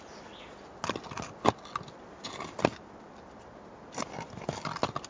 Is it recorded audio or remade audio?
recorded